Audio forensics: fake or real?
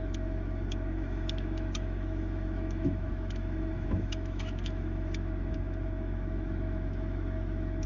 fake